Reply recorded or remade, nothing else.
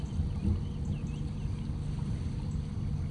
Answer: recorded